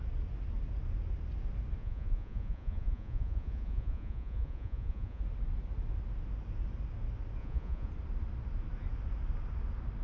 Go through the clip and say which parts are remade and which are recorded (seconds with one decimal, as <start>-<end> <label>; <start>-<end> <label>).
0.0-1.8 recorded; 1.8-5.2 remade; 5.2-7.4 recorded; 7.4-7.9 remade; 7.9-10.0 recorded